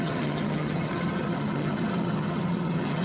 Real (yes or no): no